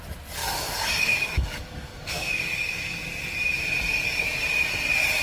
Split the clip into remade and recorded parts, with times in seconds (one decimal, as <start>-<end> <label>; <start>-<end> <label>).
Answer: 0.0-0.4 recorded; 0.4-3.0 remade; 3.0-5.2 recorded